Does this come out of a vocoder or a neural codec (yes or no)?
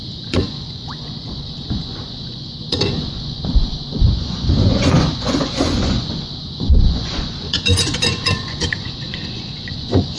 yes